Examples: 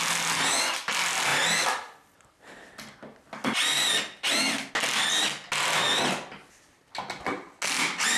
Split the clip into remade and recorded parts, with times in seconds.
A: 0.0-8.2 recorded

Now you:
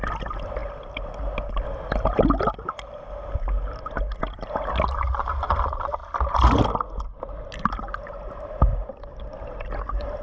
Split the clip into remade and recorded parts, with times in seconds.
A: 0.0-8.7 recorded; 8.7-10.2 remade

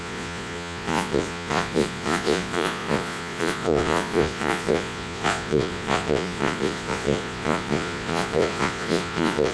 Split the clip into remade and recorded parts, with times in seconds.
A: 0.0-9.5 remade

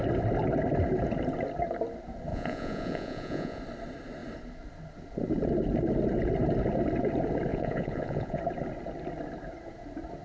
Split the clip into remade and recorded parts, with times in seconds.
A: 0.0-2.3 recorded; 2.3-3.6 remade; 3.6-7.5 recorded; 7.5-8.4 remade; 8.4-10.2 recorded

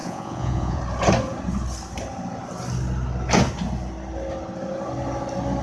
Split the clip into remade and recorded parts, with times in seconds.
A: 0.0-0.8 remade; 0.8-5.6 recorded

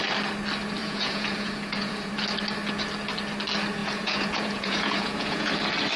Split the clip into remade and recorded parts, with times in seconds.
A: 0.0-0.8 recorded; 0.8-2.1 remade; 2.1-3.8 recorded; 3.8-5.5 remade; 5.5-6.0 recorded